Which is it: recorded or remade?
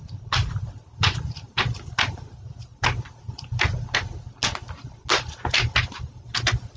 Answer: recorded